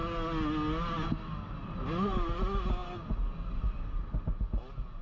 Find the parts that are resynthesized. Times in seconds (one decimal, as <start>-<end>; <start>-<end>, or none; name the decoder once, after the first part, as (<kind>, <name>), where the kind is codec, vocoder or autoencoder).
none